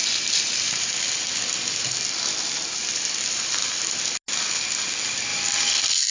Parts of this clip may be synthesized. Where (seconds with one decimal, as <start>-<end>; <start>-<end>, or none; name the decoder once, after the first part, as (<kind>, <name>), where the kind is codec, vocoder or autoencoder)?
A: 0.0-0.8 (vocoder, BigVGAN v2); 2.8-3.8; 5.3-6.1